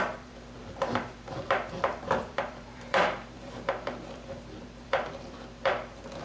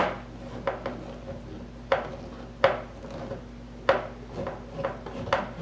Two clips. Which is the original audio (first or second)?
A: second